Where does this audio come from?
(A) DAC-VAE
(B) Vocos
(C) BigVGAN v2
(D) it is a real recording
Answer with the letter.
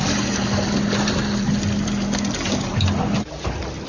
D